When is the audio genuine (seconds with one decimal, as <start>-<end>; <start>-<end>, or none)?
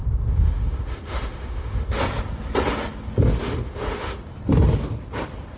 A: 2.0-3.4; 4.2-5.6